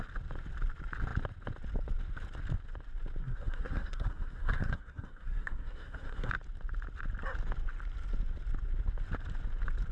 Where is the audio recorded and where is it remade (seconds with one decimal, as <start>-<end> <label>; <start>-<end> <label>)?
0.0-3.2 recorded; 3.2-6.3 remade; 6.3-9.9 recorded